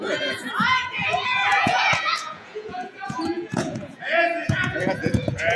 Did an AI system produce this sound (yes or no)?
yes